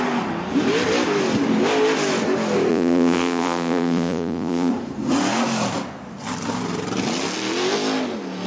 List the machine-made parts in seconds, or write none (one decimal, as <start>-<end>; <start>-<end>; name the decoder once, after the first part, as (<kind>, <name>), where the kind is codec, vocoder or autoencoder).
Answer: 2.7-4.7 (vocoder, Vocos)